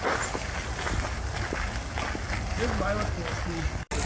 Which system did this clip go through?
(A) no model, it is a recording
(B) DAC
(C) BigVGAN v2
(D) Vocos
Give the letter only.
A